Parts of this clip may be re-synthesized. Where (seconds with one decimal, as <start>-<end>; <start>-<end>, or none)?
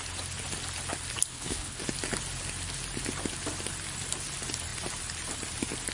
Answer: 1.3-1.8